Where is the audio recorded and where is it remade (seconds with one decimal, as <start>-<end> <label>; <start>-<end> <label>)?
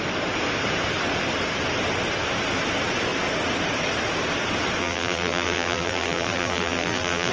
0.0-4.8 recorded; 4.8-7.3 remade